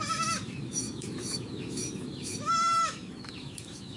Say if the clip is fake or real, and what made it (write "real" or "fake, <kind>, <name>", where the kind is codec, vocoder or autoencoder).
fake, autoencoder, DAC-VAE